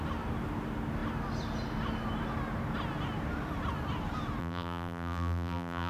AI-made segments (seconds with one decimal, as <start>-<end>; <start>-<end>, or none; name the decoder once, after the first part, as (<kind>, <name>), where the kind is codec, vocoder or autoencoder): 4.4-5.9 (vocoder, BigVGAN v2)